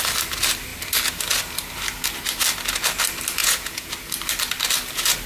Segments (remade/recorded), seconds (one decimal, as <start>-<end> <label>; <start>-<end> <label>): 0.0-3.4 recorded; 3.4-3.9 remade; 3.9-5.3 recorded

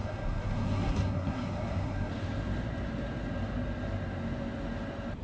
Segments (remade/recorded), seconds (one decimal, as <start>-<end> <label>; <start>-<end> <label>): 0.0-2.1 remade; 2.1-5.2 recorded